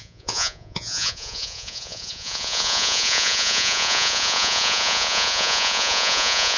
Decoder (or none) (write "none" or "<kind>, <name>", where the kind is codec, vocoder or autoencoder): vocoder, Vocos